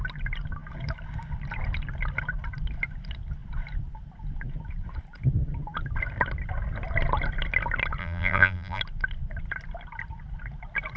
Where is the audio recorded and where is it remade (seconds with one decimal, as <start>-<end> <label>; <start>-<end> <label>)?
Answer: 0.0-8.0 recorded; 8.0-8.8 remade; 8.8-11.0 recorded